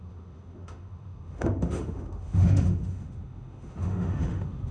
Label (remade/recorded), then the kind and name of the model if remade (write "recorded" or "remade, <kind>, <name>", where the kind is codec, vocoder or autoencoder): remade, autoencoder, DAC-VAE